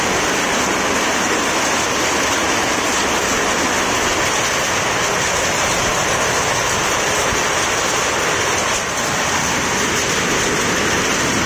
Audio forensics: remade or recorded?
recorded